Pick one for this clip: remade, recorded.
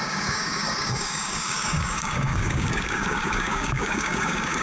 remade